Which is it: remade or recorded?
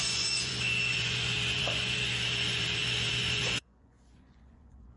remade